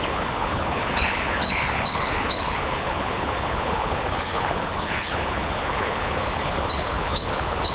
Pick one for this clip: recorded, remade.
remade